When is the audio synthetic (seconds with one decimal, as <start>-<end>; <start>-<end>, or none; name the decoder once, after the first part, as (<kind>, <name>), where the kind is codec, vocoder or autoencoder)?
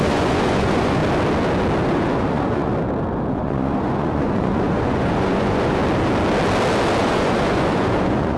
0.0-1.0 (vocoder, Vocos); 1.9-2.7; 3.3-5.8; 7.0-8.4